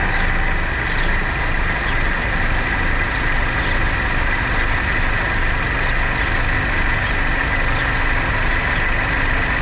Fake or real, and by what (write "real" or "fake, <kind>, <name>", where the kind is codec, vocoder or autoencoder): real